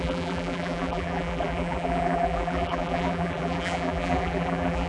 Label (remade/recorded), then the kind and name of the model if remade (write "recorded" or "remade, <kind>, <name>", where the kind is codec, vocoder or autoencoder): remade, vocoder, BigVGAN v2